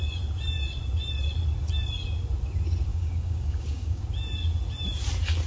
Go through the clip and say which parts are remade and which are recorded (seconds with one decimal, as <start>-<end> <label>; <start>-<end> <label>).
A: 0.0-2.9 recorded; 2.9-4.0 remade; 4.0-5.5 recorded